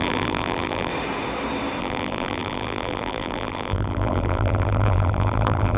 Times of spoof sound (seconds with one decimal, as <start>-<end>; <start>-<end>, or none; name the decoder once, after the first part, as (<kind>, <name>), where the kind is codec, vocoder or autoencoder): 0.0-0.9 (vocoder, BigVGAN v2); 1.8-5.8